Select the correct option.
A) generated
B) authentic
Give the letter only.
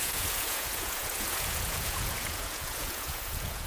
A